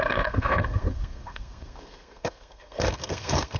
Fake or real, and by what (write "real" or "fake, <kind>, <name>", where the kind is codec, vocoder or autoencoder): fake, codec, SNAC